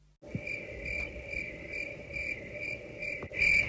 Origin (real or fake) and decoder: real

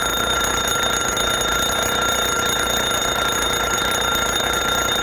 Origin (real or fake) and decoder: real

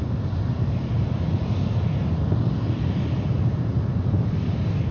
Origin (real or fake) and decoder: real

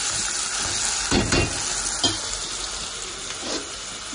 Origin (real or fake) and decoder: real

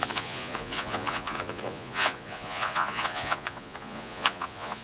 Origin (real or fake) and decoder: fake, vocoder, Vocos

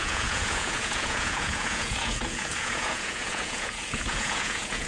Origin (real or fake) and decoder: fake, vocoder, Vocos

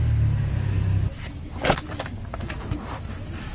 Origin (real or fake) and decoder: real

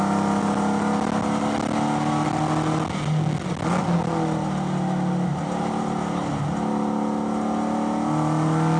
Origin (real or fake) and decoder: real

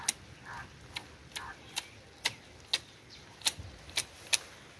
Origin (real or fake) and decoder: real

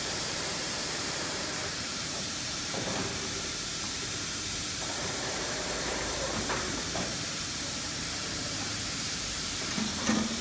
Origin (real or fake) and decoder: fake, vocoder, BigVGAN v2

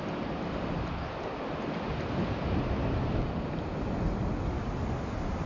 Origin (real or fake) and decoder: real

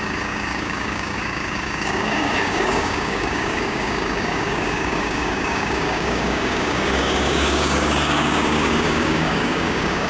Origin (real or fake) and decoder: fake, codec, DAC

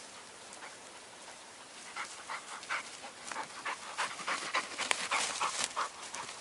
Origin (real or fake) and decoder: real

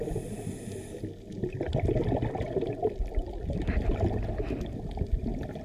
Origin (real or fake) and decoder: real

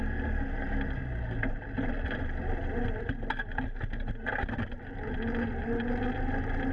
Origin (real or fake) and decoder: real